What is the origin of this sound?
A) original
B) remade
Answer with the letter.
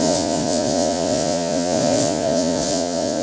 B